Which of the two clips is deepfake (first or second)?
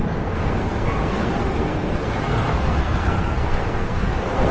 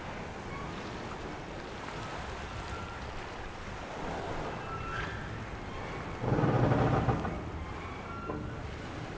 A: first